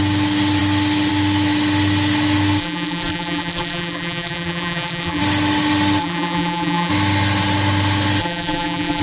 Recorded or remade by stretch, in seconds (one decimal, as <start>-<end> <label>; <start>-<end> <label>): 0.0-2.6 recorded; 2.6-5.2 remade; 5.2-6.0 recorded; 6.0-6.9 remade; 6.9-8.2 recorded; 8.2-9.0 remade